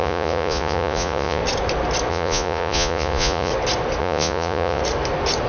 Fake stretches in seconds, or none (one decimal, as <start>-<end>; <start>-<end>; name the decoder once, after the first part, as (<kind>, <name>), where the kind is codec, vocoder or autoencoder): 0.0-1.4 (vocoder, Vocos); 2.1-3.5; 4.0-4.8